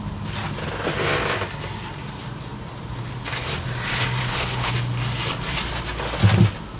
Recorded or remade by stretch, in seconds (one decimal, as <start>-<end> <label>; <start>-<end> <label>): 0.0-4.2 recorded; 4.2-4.7 remade; 4.7-6.8 recorded